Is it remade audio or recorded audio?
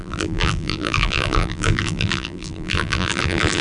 remade